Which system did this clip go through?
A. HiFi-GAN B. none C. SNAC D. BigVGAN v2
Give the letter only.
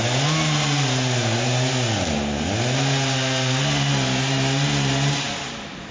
B